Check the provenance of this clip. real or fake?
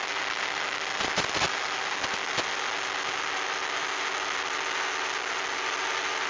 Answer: real